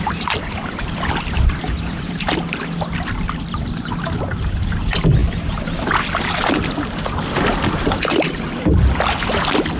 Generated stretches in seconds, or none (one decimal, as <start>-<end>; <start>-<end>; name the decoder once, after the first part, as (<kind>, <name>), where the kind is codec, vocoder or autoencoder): none